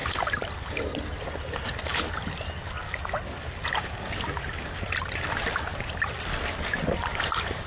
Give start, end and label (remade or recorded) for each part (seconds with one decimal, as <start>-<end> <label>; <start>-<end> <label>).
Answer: 0.0-7.7 recorded